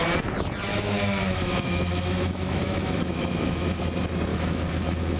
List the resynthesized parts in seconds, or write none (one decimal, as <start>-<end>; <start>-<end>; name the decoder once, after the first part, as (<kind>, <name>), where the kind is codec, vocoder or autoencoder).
0.7-3.8 (autoencoder, DAC-VAE); 4.3-5.2